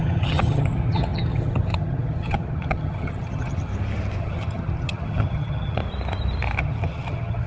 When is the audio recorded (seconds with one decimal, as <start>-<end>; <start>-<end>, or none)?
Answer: 3.7-4.2; 5.8-6.6